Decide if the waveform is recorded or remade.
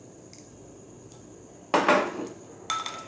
recorded